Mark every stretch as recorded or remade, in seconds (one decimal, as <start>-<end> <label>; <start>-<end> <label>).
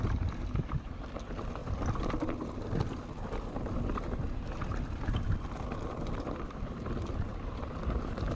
0.0-7.3 recorded; 7.3-8.3 remade